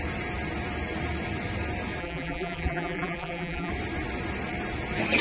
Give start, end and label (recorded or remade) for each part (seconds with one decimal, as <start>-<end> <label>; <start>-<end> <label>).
0.0-2.0 recorded; 2.0-3.7 remade; 3.7-5.2 recorded